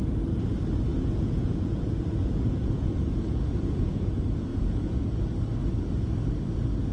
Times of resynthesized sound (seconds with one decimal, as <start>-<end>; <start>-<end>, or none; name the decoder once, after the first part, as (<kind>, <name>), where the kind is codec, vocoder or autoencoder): 0.9-4.1 (vocoder, Vocos); 4.5-5.2